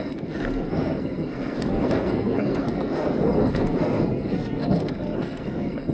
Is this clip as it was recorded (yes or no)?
no